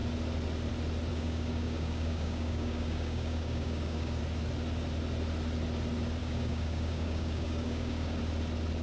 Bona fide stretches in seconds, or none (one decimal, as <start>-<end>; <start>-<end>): 0.0-1.1; 4.2-6.2; 8.2-8.8